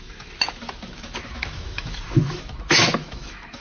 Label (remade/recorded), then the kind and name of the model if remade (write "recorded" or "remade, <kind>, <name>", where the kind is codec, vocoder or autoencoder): remade, autoencoder, DAC-VAE